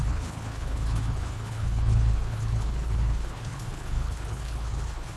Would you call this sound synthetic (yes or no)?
yes